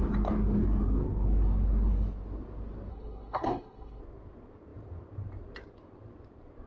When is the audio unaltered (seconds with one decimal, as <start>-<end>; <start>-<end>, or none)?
0.0-2.9; 4.0-6.7